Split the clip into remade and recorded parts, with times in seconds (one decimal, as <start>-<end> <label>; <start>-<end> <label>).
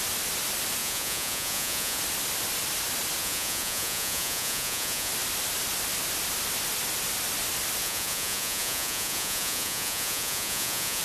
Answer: 0.0-0.8 recorded; 0.8-2.0 remade; 2.0-3.2 recorded; 3.2-5.1 remade; 5.1-7.8 recorded; 7.8-11.0 remade